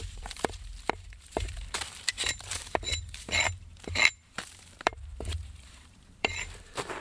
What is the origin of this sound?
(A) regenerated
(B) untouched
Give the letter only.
A